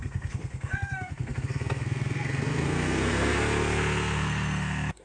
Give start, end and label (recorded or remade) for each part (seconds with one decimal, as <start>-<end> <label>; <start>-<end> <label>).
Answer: 0.0-5.0 remade

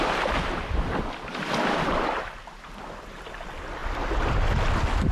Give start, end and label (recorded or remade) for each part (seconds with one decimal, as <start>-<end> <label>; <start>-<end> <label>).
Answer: 0.0-5.1 recorded

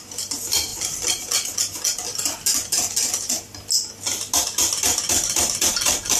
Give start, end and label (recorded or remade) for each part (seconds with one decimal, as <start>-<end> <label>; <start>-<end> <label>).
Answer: 0.0-6.2 recorded

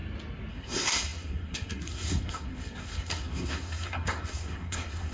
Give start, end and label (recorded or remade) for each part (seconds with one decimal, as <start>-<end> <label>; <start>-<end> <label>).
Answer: 0.0-0.5 recorded; 0.5-5.1 remade

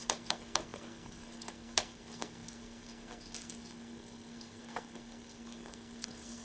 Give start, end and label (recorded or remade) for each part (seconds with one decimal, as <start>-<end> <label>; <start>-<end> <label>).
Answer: 0.0-6.4 remade

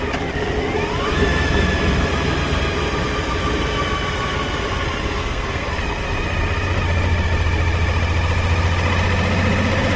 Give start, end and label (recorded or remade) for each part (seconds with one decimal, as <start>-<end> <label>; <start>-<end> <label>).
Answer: 0.0-5.2 recorded; 5.2-5.7 remade; 5.7-10.0 recorded

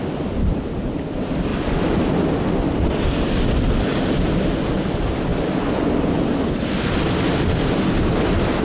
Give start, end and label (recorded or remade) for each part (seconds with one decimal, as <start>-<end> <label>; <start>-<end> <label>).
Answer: 0.0-8.6 recorded